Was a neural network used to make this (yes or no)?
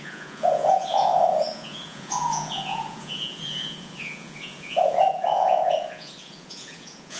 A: yes